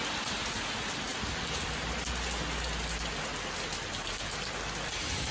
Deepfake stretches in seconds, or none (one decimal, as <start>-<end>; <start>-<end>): none